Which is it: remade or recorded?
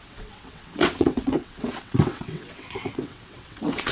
remade